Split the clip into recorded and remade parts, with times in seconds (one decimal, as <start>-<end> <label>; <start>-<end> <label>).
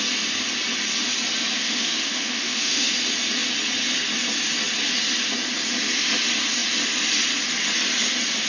0.0-1.6 recorded; 1.6-2.9 remade; 2.9-8.5 recorded